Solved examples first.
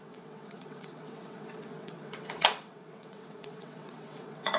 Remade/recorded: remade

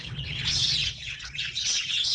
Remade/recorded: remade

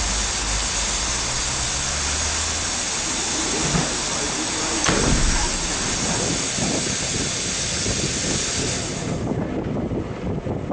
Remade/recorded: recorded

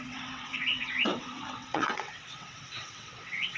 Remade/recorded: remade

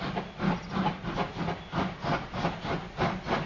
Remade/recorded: recorded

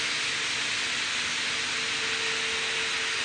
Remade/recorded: recorded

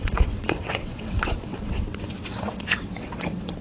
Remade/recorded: remade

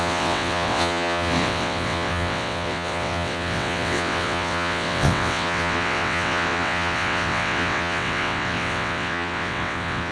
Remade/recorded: remade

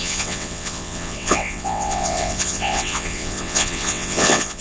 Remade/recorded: remade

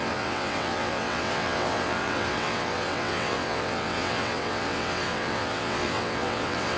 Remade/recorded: remade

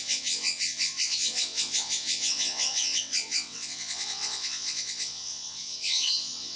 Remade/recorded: remade